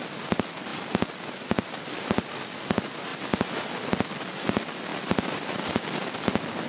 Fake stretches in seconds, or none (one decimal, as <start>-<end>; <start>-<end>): 0.7-1.3; 3.1-4.1; 4.9-5.7